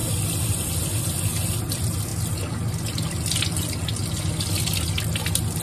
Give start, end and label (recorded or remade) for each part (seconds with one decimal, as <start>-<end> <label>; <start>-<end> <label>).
0.0-5.6 recorded

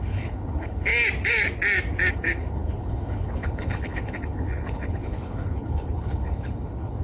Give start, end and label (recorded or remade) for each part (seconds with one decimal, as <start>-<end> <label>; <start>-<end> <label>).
0.0-0.9 remade; 0.9-2.1 recorded; 2.1-7.0 remade

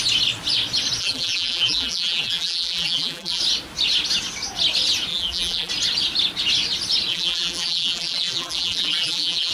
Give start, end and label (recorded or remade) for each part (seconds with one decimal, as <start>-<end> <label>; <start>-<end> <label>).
0.0-1.0 recorded; 1.0-3.4 remade; 3.4-5.1 recorded; 5.1-5.7 remade; 5.7-7.1 recorded; 7.1-9.5 remade